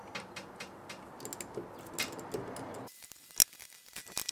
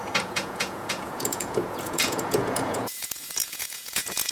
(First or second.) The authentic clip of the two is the first